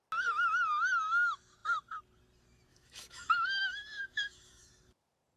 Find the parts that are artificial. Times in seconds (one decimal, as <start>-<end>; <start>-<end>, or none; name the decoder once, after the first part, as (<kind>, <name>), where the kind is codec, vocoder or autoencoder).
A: 2.7-4.7 (autoencoder, DAC-VAE)